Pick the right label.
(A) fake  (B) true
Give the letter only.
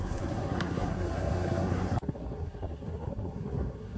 A